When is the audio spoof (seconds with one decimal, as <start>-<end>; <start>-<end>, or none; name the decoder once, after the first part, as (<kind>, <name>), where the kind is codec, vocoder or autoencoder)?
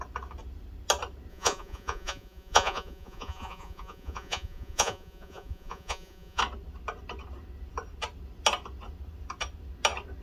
1.3-6.4 (vocoder, Vocos)